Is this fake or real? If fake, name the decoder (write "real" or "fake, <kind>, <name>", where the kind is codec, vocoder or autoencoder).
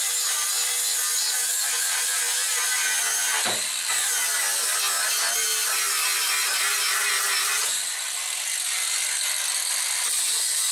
real